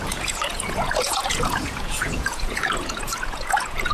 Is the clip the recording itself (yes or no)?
no